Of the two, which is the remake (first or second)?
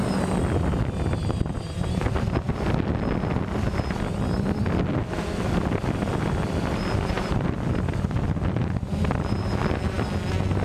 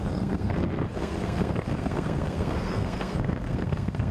second